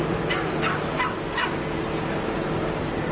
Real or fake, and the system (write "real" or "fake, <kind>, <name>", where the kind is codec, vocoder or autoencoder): real